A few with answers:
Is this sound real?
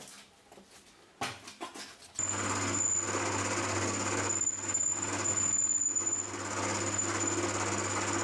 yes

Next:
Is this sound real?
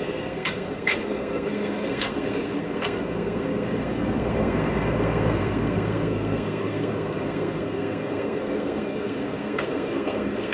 no